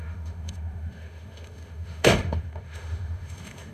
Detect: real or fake fake